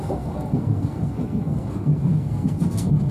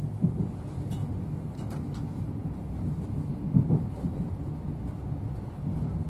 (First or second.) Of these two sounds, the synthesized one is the first